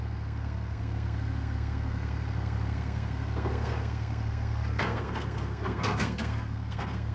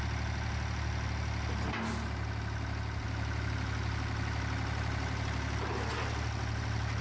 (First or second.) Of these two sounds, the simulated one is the first